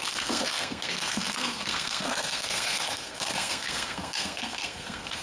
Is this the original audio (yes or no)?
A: no